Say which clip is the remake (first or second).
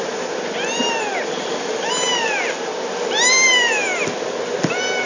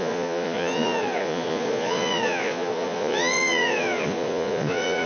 second